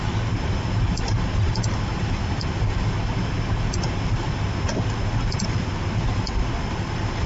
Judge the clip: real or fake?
real